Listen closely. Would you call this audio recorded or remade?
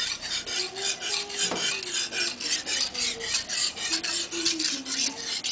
recorded